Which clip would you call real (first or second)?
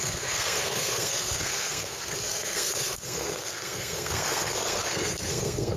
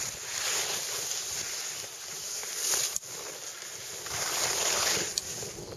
second